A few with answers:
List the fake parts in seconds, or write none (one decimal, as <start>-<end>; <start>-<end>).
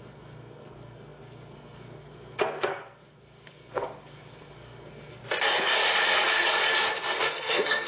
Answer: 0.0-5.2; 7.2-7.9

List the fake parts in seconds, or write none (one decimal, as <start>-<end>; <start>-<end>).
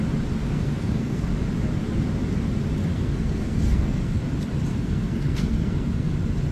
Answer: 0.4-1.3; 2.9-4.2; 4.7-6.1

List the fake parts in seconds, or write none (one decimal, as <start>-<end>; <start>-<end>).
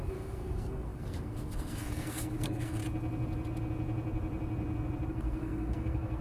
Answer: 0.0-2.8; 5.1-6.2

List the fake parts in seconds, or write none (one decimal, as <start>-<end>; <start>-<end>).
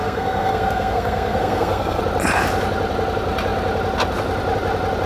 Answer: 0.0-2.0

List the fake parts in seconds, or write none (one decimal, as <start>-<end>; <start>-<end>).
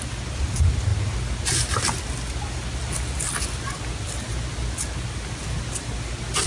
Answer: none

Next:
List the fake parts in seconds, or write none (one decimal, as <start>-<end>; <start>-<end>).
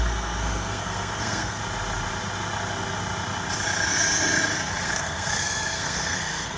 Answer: 0.0-1.6; 4.8-6.6